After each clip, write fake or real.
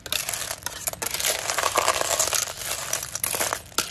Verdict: real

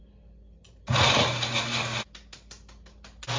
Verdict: real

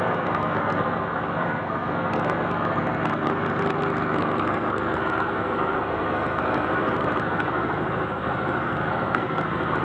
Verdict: fake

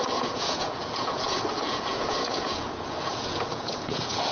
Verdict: fake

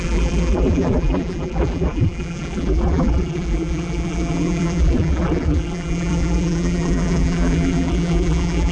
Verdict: fake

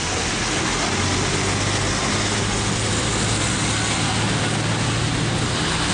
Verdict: real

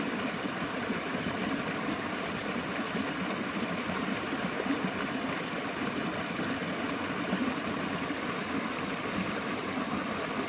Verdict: fake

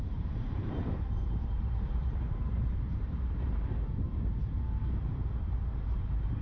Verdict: fake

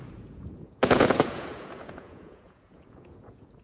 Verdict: fake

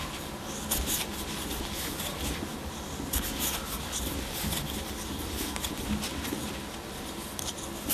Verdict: real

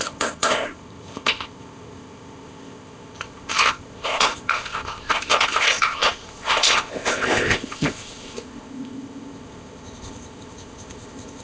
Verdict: fake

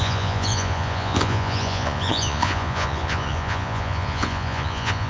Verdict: fake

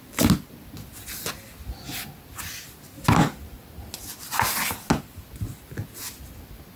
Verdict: real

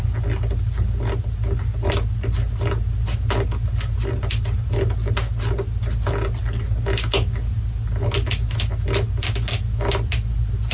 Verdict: real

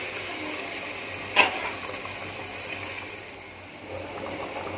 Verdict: real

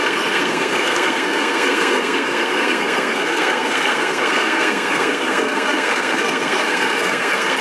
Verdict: fake